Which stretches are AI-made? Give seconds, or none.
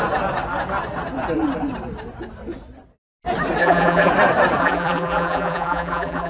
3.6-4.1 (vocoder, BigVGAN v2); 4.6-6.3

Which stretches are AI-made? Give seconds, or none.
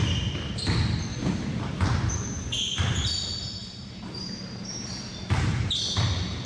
1.1-2.6 (vocoder, BigVGAN v2); 3.6-4.9